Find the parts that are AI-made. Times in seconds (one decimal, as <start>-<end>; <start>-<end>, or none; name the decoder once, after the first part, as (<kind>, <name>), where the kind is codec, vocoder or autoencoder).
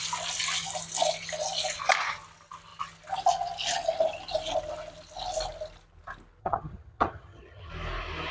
6.4-7.7 (vocoder, HiFi-GAN)